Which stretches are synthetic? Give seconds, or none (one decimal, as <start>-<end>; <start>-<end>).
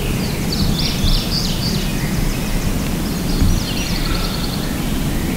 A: none